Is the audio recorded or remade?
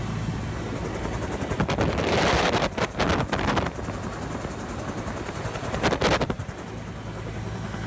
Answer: recorded